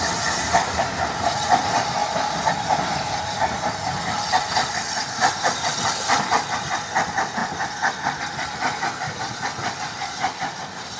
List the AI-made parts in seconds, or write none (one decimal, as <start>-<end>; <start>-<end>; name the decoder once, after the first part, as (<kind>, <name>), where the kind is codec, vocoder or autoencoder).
none